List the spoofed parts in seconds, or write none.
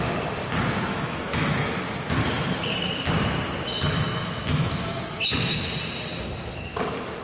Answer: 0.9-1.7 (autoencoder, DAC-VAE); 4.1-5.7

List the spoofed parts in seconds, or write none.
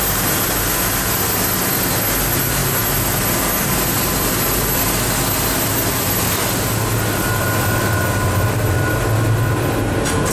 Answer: none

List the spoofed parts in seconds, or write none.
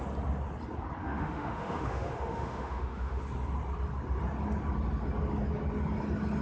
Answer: 1.0-3.2 (autoencoder, DAC-VAE)